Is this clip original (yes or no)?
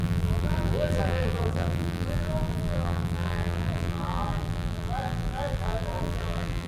no